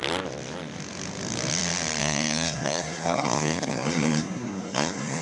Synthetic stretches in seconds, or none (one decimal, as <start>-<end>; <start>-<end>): 2.0-5.2